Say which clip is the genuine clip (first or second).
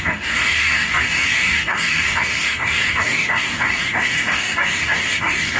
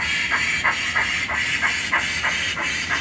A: second